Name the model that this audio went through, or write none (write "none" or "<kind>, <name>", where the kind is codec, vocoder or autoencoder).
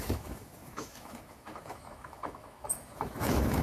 autoencoder, DAC-VAE